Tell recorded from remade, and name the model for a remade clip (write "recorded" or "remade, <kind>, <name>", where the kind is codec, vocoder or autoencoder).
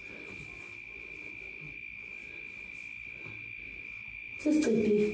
recorded